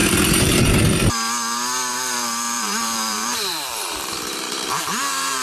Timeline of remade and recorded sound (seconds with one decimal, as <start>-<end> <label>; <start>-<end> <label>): 0.0-0.6 remade; 0.6-1.9 recorded; 1.9-5.4 remade